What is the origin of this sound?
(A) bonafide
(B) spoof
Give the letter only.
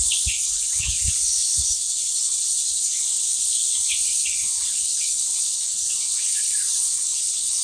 B